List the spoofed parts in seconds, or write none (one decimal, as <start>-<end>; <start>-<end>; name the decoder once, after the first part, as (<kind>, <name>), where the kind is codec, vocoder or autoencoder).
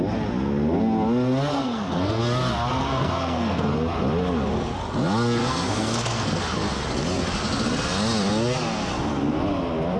1.5-2.2 (codec, SNAC); 2.7-3.7; 5.4-6.4